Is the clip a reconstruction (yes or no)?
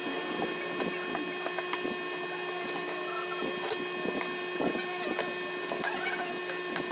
no